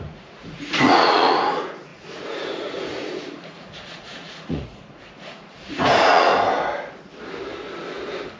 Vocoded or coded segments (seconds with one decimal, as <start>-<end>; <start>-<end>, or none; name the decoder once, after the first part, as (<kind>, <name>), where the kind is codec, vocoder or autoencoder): 0.0-6.3 (vocoder, Vocos)